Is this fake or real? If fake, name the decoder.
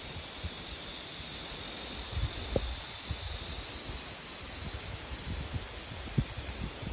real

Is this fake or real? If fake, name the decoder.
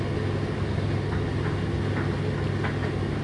real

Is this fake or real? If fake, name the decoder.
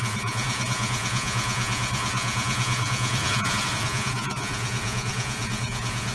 fake, vocoder, Vocos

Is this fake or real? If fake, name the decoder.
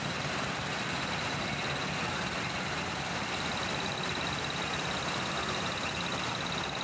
real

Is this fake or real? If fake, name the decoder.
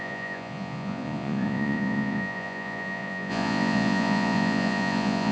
fake, vocoder, Vocos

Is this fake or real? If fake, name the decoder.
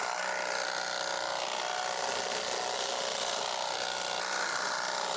real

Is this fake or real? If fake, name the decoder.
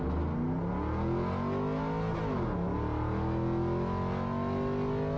real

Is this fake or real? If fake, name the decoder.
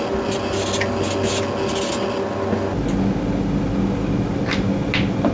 real